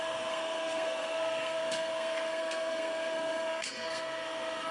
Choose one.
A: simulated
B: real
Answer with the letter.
A